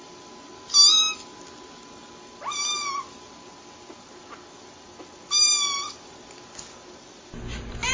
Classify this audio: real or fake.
real